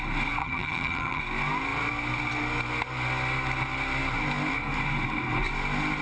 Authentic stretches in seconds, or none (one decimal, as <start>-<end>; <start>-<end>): 0.0-0.4; 1.2-6.0